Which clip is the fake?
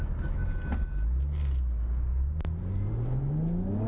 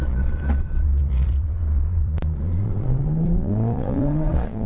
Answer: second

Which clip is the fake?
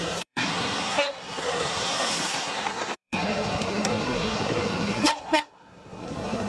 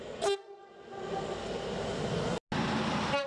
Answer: first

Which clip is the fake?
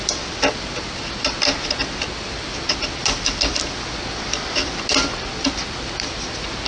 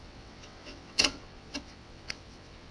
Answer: second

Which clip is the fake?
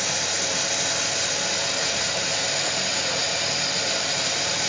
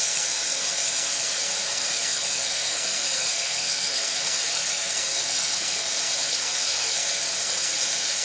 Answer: second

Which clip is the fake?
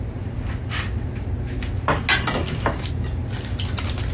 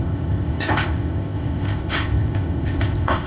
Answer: second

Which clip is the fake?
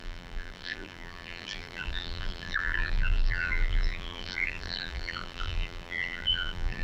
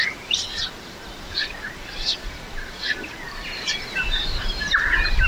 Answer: first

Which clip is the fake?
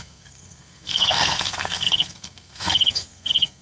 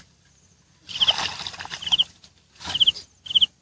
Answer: first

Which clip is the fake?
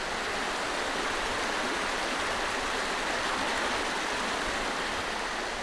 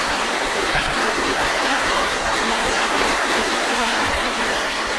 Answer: second